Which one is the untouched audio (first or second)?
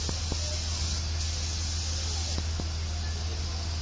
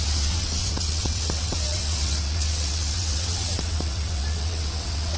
first